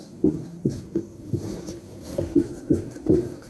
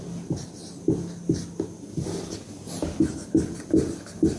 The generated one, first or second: first